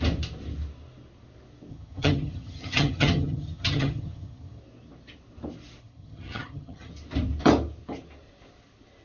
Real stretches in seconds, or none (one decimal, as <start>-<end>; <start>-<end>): 0.0-1.7; 4.6-5.8; 6.9-9.0